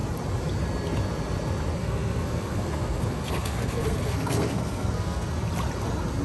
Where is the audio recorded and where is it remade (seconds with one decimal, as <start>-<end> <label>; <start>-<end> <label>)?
0.0-1.8 recorded; 1.8-5.3 remade; 5.3-6.2 recorded